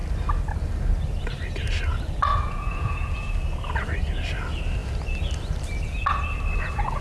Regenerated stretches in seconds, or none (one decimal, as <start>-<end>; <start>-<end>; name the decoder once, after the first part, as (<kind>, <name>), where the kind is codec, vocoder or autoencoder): 2.3-3.3 (vocoder, Vocos)